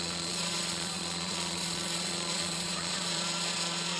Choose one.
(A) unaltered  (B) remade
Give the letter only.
B